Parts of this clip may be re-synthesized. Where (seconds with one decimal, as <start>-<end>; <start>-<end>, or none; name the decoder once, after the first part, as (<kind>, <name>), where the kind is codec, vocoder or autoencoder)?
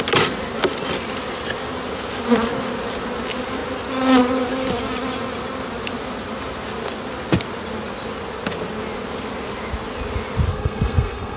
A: 10.5-11.4 (codec, SNAC)